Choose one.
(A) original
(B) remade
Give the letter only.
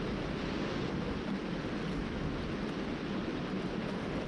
A